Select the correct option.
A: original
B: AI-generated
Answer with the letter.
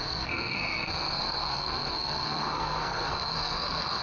B